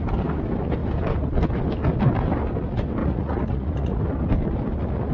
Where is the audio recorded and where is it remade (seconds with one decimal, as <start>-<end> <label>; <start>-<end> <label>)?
0.0-3.0 recorded; 3.0-4.0 remade; 4.0-5.1 recorded